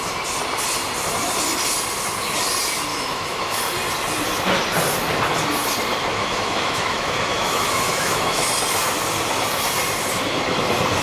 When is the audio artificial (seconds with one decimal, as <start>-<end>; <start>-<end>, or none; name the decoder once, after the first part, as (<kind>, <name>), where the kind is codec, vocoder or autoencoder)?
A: 2.9-3.6 (autoencoder, DAC-VAE); 6.1-8.5